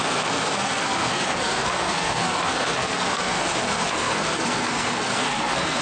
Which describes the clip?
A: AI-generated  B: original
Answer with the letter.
A